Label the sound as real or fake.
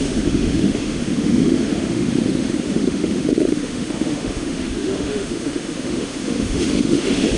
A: fake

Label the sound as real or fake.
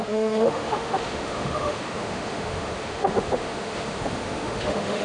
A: fake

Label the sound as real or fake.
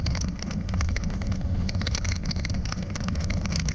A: fake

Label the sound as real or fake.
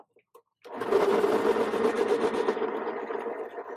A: real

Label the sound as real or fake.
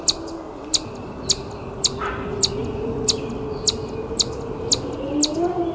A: real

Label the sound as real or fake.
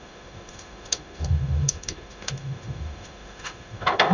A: fake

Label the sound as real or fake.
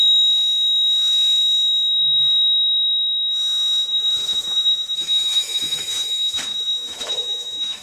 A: fake